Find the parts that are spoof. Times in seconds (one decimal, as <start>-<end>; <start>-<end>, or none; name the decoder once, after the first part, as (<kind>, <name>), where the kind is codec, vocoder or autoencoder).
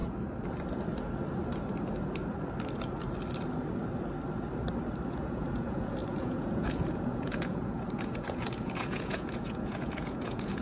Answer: 5.1-10.6 (vocoder, Vocos)